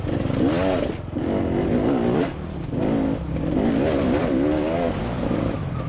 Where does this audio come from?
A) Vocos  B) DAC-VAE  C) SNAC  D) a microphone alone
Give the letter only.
D